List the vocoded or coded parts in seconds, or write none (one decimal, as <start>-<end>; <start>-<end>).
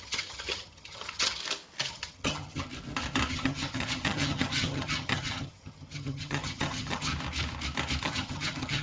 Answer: 0.0-1.4; 1.9-2.7; 3.3-7.1; 8.0-8.8